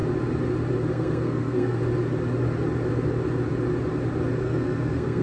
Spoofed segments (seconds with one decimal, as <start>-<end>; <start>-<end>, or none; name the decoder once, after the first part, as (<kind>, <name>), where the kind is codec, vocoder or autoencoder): 0.9-1.8 (codec, SNAC); 4.4-5.2